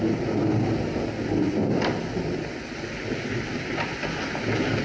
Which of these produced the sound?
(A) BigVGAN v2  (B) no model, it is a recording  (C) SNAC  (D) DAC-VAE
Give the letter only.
B